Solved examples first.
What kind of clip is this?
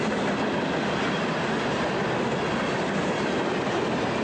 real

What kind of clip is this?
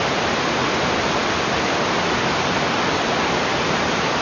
real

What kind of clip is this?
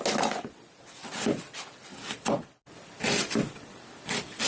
real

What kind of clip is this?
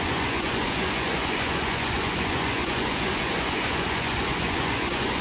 fake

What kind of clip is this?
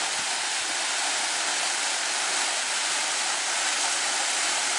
real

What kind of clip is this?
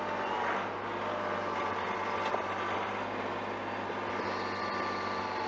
real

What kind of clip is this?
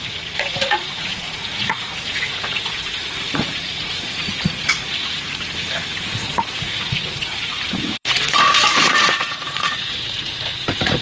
fake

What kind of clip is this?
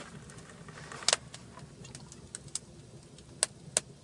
real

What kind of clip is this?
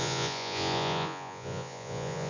fake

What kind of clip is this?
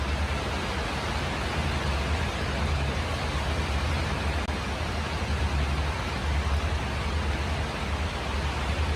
real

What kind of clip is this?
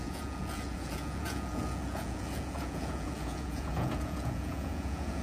fake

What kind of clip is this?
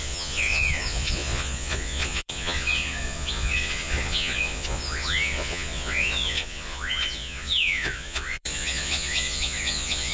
fake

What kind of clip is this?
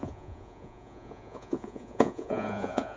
fake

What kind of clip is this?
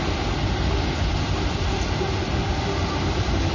real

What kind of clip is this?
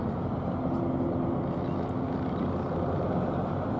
real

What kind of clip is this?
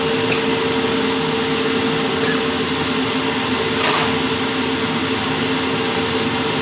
real